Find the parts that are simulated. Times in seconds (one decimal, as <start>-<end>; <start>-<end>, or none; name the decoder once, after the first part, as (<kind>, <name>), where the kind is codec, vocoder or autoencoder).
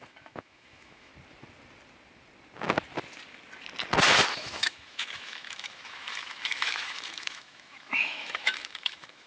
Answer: 0.0-1.1 (autoencoder, DAC-VAE); 4.3-9.3